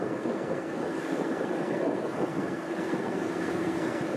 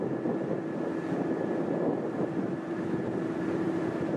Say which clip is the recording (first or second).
second